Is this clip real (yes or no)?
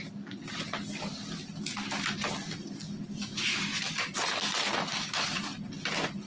yes